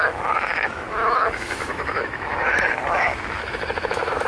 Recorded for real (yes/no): no